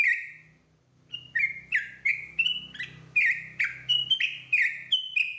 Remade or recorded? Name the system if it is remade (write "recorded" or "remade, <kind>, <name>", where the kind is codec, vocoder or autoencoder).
recorded